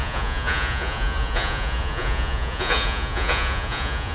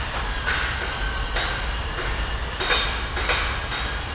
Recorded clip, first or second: second